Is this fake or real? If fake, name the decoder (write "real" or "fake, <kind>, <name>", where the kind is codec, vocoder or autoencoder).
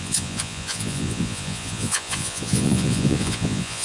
fake, vocoder, Vocos